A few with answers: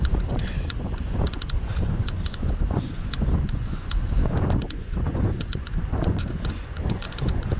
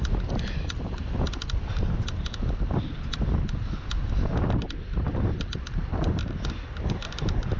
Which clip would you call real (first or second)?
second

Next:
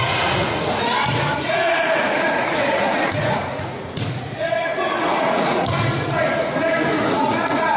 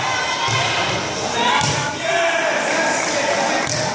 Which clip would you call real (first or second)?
second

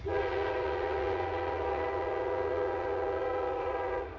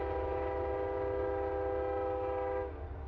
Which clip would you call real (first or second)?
second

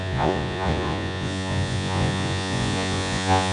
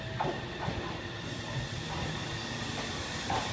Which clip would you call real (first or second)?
second